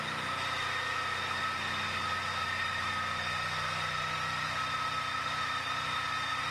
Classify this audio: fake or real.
real